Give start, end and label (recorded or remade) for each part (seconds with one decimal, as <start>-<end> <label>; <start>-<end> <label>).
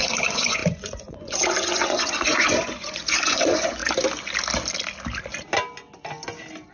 0.0-3.8 remade; 3.8-6.7 recorded